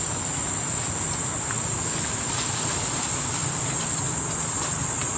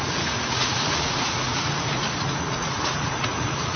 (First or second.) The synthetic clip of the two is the second